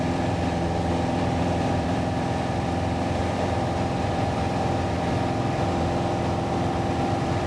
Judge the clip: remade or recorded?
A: remade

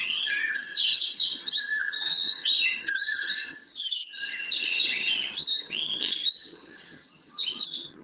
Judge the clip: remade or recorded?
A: remade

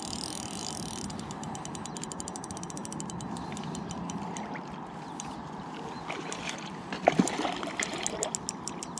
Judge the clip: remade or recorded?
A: recorded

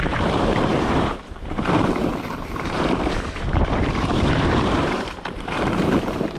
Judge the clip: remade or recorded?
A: remade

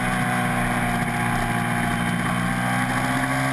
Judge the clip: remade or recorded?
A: recorded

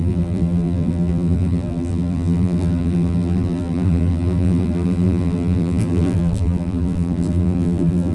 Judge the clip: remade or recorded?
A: remade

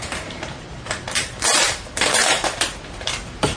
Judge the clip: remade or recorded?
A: remade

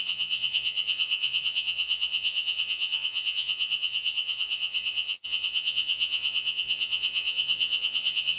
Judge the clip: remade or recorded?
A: remade